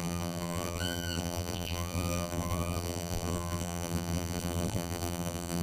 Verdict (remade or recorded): remade